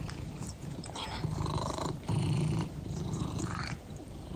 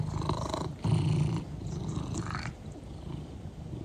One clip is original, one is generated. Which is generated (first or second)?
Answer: first